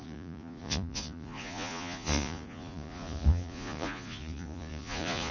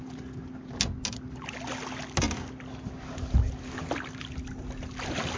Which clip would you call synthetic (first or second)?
first